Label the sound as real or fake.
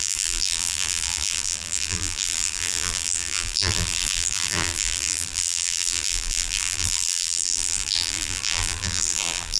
fake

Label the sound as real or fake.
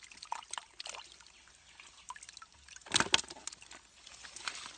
real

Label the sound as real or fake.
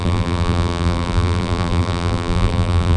fake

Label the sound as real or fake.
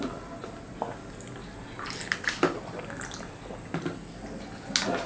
real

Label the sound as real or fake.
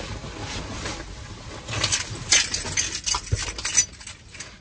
real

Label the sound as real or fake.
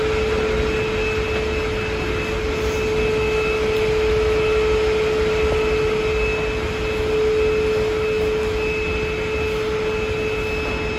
real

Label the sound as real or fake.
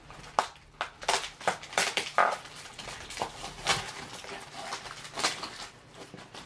real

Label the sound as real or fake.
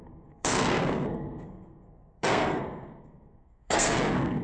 fake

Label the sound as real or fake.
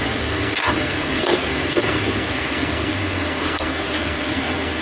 fake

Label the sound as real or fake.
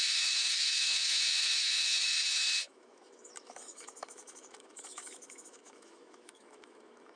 fake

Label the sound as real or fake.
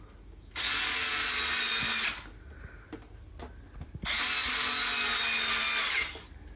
real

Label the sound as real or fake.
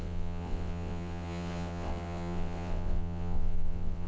fake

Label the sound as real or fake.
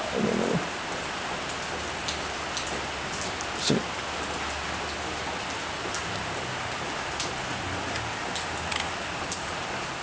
real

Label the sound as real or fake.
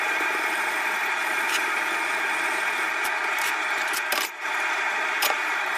fake